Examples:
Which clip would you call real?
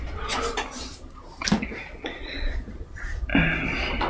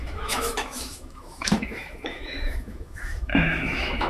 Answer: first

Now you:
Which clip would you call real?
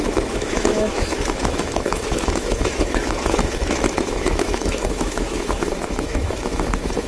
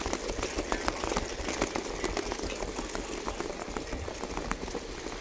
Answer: second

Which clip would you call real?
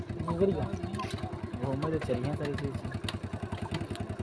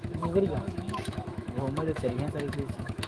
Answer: first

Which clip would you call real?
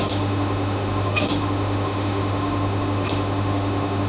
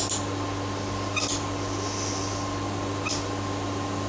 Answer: second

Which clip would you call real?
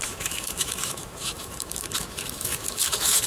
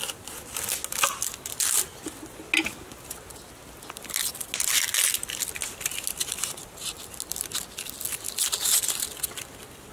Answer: second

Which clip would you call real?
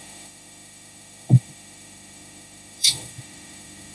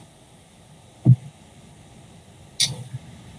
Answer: second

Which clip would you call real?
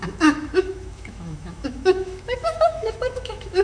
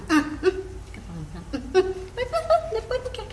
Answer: second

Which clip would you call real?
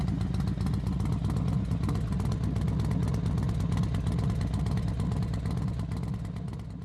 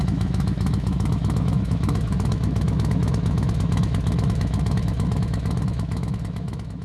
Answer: first